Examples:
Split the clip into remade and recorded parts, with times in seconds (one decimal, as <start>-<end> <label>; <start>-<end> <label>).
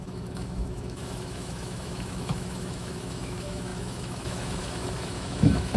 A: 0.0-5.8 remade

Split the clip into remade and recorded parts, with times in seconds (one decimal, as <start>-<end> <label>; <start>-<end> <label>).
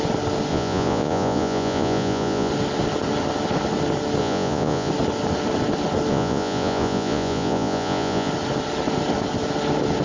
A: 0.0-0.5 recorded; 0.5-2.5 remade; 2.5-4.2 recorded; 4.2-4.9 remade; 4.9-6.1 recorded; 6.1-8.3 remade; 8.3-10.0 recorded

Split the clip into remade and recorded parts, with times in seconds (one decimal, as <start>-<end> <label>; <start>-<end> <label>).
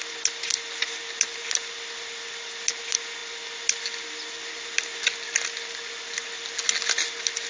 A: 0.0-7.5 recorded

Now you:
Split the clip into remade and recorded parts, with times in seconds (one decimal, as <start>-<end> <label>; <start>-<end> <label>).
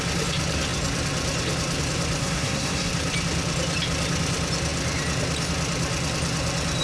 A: 0.0-2.2 recorded; 2.2-2.9 remade; 2.9-6.8 recorded